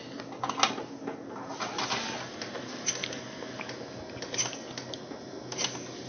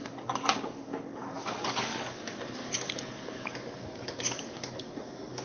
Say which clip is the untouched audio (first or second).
first